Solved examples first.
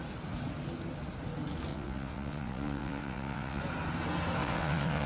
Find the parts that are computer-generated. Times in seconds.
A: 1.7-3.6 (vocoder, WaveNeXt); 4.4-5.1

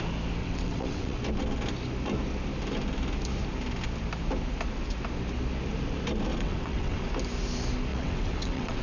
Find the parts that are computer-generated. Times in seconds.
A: 0.4-1.2 (vocoder, WaveNeXt); 6.3-7.0; 7.9-8.8

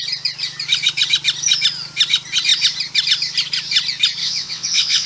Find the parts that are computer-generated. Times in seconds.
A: 4.2-5.1 (vocoder, WaveNeXt)